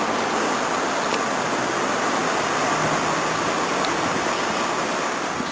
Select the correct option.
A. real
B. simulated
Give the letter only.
A